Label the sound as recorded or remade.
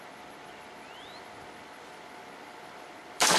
recorded